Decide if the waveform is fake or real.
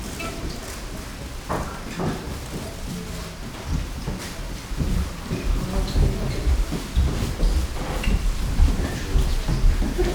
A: real